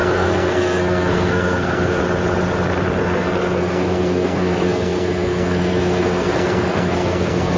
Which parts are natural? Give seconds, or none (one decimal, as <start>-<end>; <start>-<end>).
2.0-3.0